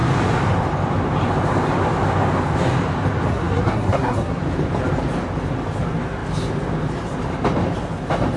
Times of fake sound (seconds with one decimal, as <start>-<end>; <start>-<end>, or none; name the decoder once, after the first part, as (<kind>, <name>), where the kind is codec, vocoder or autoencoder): 3.3-4.4 (codec, SNAC)

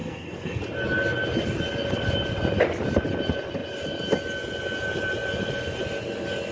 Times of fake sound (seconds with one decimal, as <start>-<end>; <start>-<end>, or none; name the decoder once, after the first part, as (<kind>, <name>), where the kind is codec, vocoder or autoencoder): 0.0-0.6 (codec, SNAC)